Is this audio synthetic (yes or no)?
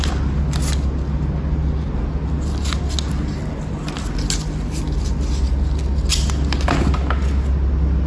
no